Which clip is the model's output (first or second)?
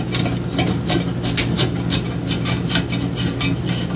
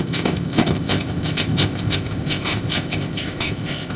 second